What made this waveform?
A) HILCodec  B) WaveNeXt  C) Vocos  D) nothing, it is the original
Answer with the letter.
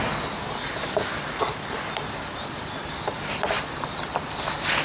D